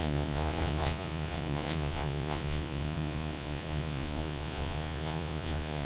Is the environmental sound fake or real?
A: fake